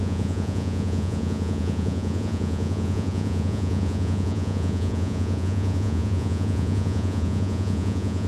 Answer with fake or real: fake